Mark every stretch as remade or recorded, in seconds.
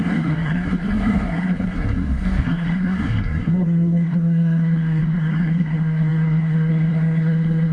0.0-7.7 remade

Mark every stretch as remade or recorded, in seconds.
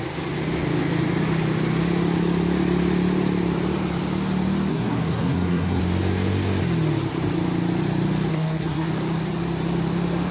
0.0-4.7 recorded; 4.7-5.8 remade; 5.8-8.3 recorded; 8.3-8.9 remade; 8.9-10.3 recorded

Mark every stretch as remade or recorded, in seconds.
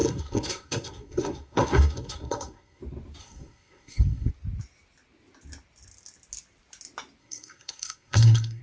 0.0-2.8 remade; 2.8-3.2 recorded; 3.2-4.3 remade; 4.3-7.2 recorded; 7.2-8.6 remade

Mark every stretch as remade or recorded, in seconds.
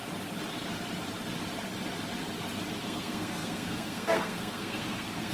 0.0-2.8 recorded; 2.8-5.3 remade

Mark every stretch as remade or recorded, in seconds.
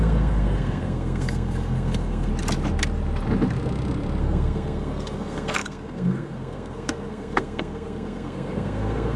0.0-2.3 remade; 2.3-4.2 recorded; 4.2-9.2 remade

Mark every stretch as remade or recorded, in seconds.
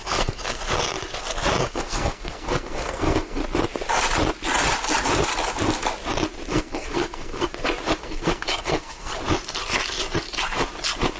0.0-0.6 remade; 0.6-1.6 recorded; 1.6-3.4 remade; 3.4-6.5 recorded; 6.5-7.5 remade; 7.5-8.0 recorded; 8.0-9.1 remade; 9.1-11.2 recorded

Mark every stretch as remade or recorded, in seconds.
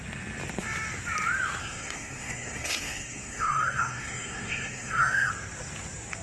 0.0-1.6 recorded; 1.6-5.3 remade; 5.3-6.2 recorded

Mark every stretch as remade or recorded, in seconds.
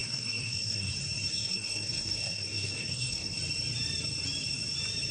0.0-0.9 remade; 0.9-1.3 recorded; 1.3-3.4 remade; 3.4-5.1 recorded